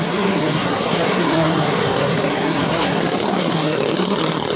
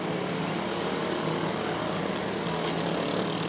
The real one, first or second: second